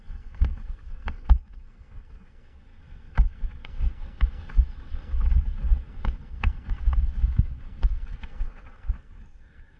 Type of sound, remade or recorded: remade